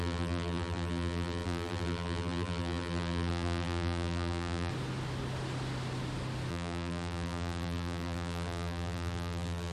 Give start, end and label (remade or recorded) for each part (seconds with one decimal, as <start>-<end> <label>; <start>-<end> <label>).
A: 0.0-4.7 remade; 4.7-6.5 recorded; 6.5-9.7 remade